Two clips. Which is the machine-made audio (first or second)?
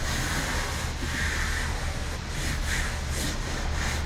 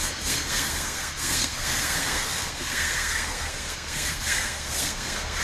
second